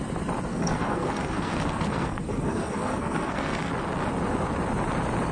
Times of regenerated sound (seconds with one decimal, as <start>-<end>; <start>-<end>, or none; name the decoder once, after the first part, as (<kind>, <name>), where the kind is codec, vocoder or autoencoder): 0.5-3.7 (codec, SNAC)